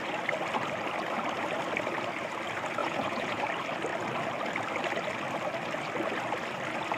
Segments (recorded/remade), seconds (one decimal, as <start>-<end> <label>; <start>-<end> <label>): 0.0-2.8 recorded; 2.8-3.4 remade; 3.4-7.0 recorded